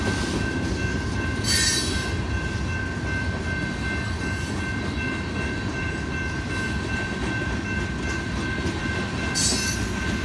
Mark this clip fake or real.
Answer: real